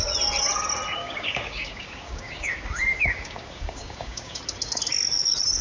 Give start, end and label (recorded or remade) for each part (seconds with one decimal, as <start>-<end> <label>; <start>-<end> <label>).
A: 0.0-1.0 recorded; 1.0-4.4 remade; 4.4-5.6 recorded